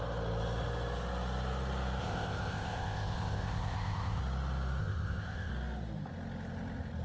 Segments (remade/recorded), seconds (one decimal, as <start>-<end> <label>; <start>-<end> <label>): 0.0-2.0 recorded; 2.0-4.2 remade; 4.2-4.8 recorded; 4.8-5.5 remade; 5.5-7.0 recorded